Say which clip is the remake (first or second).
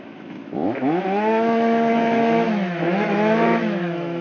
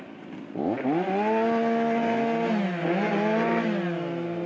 first